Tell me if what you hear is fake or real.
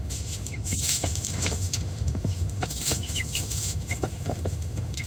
fake